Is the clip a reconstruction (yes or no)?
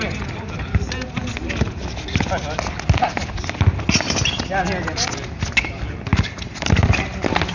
no